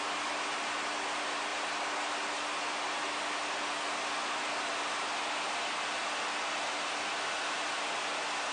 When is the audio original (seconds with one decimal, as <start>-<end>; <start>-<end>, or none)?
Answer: 0.0-8.5